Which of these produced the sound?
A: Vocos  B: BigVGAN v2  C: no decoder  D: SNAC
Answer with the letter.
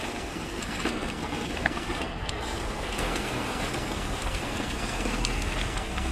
D